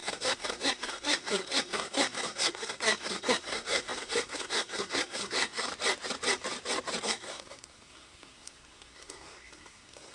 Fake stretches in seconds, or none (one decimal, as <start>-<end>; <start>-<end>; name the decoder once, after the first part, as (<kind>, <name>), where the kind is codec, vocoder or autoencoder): 0.0-5.7 (codec, SNAC); 7.0-10.1